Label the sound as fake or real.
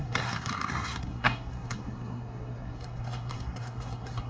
fake